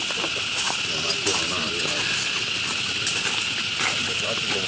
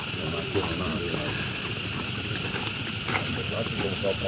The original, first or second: first